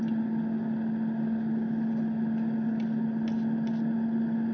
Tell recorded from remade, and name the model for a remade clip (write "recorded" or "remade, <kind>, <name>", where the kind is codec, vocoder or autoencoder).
recorded